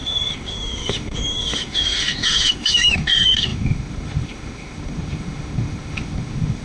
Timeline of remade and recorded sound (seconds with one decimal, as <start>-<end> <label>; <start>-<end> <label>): 0.0-6.6 remade